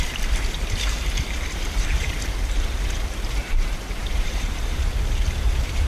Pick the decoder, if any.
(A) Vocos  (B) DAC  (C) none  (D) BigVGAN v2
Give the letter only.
D